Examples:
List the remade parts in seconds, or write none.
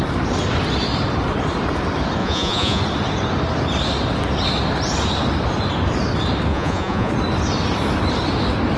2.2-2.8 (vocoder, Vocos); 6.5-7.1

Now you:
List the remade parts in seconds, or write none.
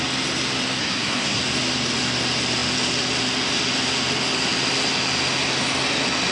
0.8-1.4 (codec, SNAC)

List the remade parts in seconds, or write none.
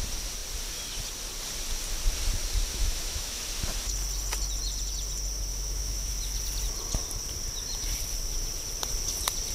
2.7-3.4 (autoencoder, DAC-VAE); 5.5-6.1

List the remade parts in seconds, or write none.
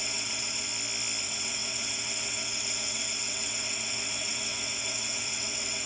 0.0-0.7 (vocoder, WaveNeXt); 1.2-5.9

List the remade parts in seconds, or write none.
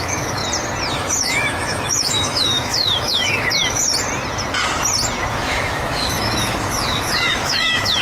0.0-0.4 (autoencoder, DAC-VAE); 0.9-3.9; 5.3-8.0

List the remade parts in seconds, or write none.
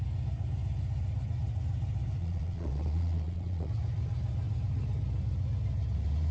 2.2-3.7 (vocoder, Vocos)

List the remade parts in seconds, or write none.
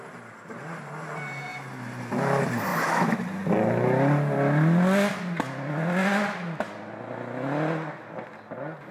2.7-3.2 (autoencoder, DAC-VAE)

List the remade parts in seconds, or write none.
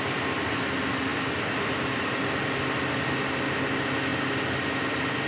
none